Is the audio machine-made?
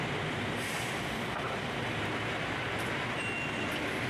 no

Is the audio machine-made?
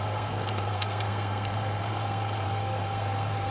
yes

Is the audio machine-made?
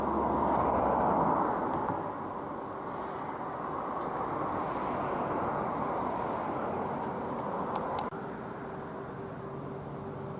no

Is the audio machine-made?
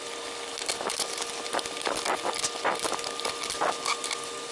no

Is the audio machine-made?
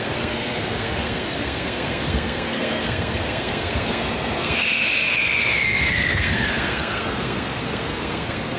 yes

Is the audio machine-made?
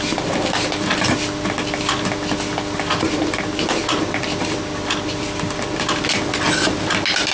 no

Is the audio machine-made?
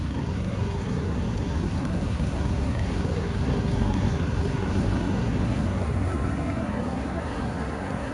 yes